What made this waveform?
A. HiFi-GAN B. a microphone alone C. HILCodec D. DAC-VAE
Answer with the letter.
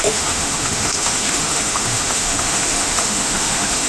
D